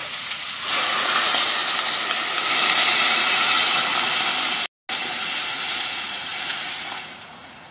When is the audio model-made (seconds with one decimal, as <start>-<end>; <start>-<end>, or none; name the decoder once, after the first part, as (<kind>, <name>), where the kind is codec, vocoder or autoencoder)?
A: 0.0-1.6 (vocoder, Vocos); 2.9-3.9; 5.5-7.7